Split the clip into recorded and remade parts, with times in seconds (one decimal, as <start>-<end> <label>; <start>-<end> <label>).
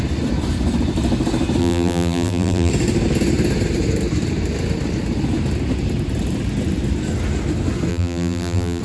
0.0-1.6 recorded; 1.6-2.7 remade; 2.7-7.9 recorded; 7.9-8.8 remade